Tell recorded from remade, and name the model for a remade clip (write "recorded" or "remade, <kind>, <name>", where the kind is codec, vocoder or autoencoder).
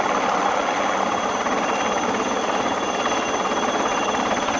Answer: recorded